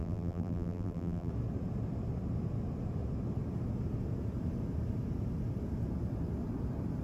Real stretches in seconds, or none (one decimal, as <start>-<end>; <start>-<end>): 1.3-7.0